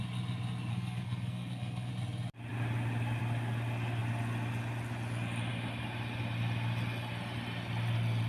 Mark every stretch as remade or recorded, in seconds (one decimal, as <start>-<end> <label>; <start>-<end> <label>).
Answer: 0.0-0.7 recorded; 0.7-1.9 remade; 1.9-8.3 recorded